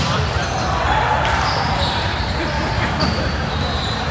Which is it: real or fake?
fake